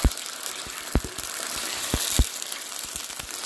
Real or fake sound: real